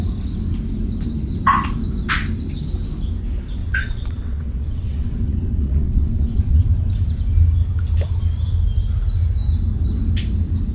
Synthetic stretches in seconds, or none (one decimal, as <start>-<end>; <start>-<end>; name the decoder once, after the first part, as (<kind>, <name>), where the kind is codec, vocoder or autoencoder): 3.6-6.6 (vocoder, WaveNeXt)